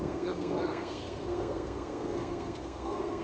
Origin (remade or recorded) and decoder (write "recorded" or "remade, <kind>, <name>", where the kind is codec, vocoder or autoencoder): remade, codec, SNAC